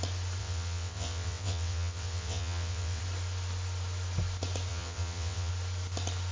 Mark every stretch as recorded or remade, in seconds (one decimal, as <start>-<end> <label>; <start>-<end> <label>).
0.0-0.4 recorded; 0.4-3.0 remade; 3.0-4.7 recorded; 4.7-5.5 remade; 5.5-6.3 recorded